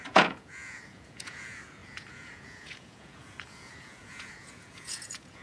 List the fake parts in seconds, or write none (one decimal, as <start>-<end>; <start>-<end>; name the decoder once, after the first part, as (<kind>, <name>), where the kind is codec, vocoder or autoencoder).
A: 0.0-5.4 (vocoder, Vocos)